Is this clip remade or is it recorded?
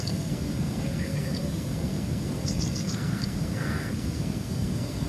remade